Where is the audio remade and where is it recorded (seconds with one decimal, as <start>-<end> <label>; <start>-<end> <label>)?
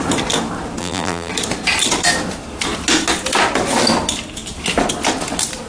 0.0-0.8 recorded; 0.8-1.3 remade; 1.3-5.7 recorded